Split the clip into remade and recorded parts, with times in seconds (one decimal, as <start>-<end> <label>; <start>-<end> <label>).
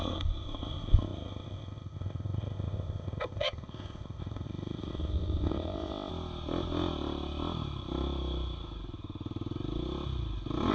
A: 0.0-6.1 remade; 6.1-10.7 recorded